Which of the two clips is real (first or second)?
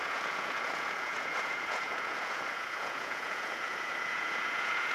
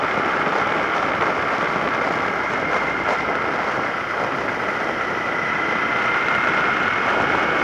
second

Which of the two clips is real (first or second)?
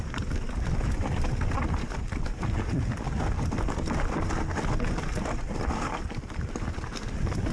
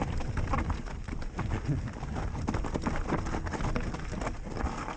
second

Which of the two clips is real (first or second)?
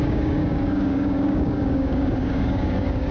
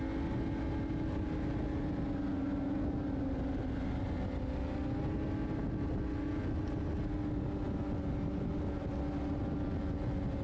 second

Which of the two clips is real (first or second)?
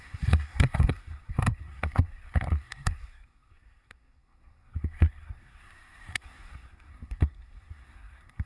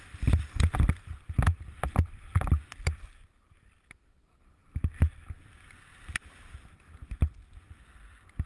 second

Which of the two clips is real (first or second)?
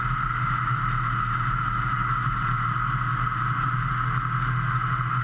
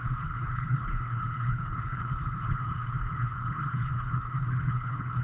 first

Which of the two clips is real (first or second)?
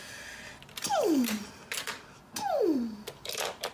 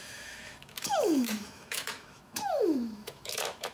first